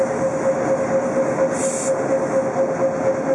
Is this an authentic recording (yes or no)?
yes